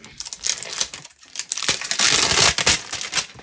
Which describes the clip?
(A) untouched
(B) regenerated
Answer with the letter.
A